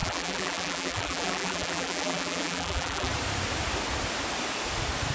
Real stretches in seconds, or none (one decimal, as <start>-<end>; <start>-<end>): 3.1-5.1